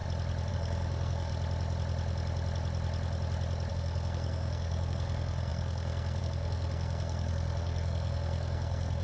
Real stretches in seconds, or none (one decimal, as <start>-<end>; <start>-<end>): 0.0-0.5; 1.3-3.7